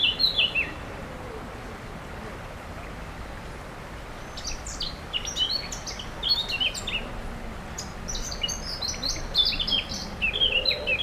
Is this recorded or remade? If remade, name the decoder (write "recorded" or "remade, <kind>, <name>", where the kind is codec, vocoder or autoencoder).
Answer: recorded